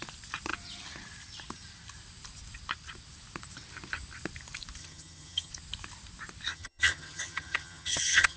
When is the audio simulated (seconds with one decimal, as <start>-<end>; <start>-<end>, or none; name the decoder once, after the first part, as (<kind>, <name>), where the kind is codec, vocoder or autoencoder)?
4.8-5.5 (vocoder, HiFi-GAN); 6.5-8.4